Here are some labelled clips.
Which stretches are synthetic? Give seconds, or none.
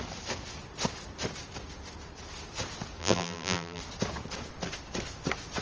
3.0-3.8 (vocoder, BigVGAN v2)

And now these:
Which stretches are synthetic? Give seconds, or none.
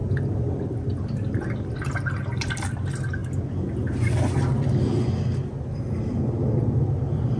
none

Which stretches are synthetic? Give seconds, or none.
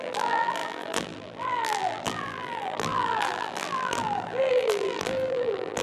0.0-5.8 (vocoder, BigVGAN v2)